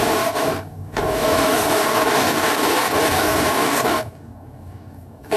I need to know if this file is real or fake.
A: fake